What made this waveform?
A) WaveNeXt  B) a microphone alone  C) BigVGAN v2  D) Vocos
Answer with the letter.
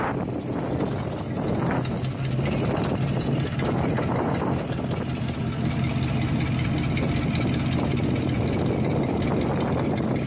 B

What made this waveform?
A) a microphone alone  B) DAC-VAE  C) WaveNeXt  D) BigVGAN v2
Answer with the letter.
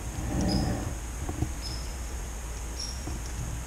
A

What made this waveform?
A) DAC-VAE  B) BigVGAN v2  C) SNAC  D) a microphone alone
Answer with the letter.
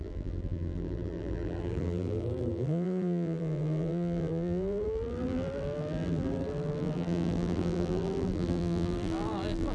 B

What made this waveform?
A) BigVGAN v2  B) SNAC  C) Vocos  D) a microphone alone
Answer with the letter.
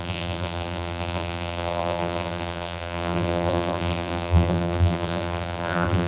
A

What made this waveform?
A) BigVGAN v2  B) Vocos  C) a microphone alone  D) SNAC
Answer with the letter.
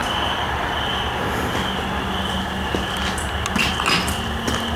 C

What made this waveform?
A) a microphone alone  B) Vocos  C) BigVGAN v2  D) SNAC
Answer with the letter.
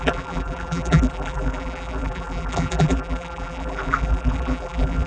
C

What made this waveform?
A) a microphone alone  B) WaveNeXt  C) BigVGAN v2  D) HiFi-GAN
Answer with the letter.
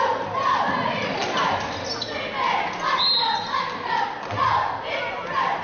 A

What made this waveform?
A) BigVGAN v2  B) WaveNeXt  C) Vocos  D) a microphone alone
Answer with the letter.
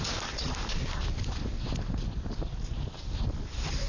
D